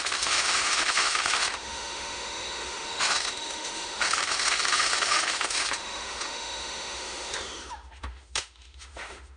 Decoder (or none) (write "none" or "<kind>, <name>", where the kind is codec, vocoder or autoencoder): autoencoder, DAC-VAE